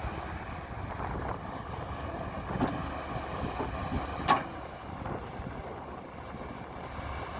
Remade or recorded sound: recorded